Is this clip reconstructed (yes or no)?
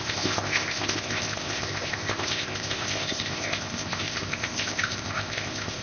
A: yes